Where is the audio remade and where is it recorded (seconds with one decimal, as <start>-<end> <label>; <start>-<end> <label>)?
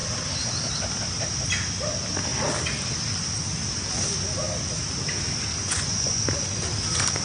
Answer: 0.0-5.6 recorded; 5.6-6.2 remade; 6.2-7.2 recorded